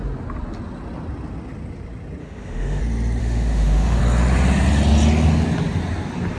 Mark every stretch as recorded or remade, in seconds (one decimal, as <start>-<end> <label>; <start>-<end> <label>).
0.0-2.2 recorded; 2.2-2.8 remade; 2.8-3.2 recorded; 3.2-4.0 remade; 4.0-6.4 recorded